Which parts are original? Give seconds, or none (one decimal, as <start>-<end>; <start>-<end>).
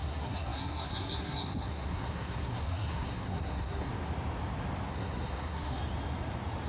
3.9-4.9; 5.8-6.7